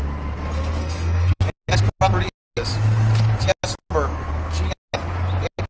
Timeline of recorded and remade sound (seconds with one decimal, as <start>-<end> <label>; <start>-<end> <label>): 0.0-0.8 recorded; 0.8-1.4 remade; 1.4-5.7 recorded